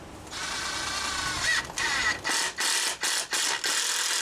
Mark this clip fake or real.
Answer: real